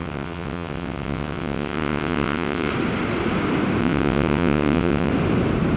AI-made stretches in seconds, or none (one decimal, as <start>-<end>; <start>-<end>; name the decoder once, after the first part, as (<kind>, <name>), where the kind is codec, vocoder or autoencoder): 0.0-2.7 (vocoder, WaveNeXt); 3.8-5.1